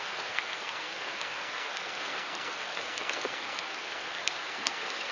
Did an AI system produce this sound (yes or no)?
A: yes